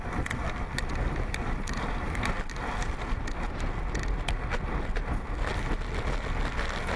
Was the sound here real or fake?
real